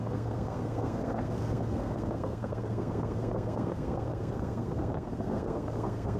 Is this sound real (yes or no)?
no